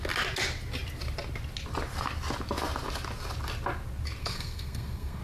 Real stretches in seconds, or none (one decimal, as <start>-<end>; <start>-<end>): 0.0-4.2